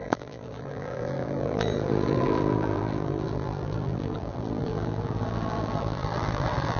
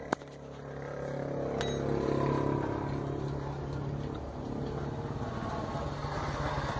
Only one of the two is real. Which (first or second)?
second